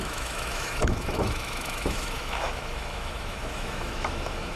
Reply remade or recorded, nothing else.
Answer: remade